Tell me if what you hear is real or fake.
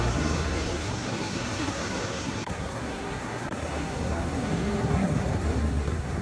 fake